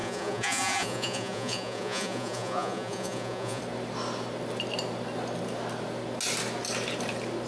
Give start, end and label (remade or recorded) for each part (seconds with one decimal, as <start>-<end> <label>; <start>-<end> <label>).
0.0-3.6 remade; 3.6-7.5 recorded